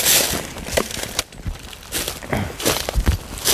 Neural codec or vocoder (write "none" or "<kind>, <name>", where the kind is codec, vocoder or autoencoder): none